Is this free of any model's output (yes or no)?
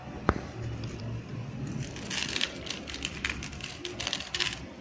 no